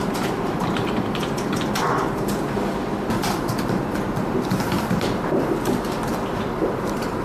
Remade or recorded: remade